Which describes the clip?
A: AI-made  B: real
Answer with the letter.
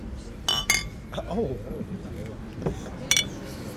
B